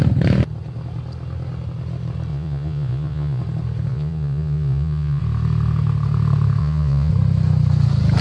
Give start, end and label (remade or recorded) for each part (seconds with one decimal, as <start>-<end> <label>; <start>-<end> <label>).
0.0-2.3 recorded; 2.3-3.4 remade; 3.4-3.9 recorded; 3.9-5.2 remade; 5.2-6.6 recorded; 6.6-7.1 remade; 7.1-8.2 recorded